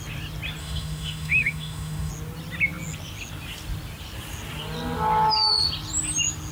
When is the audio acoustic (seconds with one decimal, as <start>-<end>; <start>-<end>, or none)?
0.0-0.6; 2.1-6.5